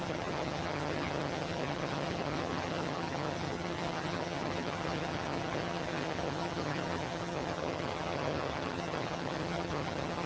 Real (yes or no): no